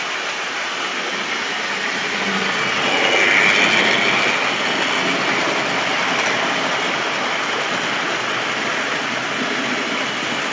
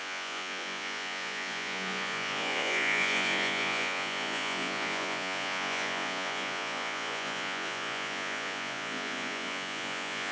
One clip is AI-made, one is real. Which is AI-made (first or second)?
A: second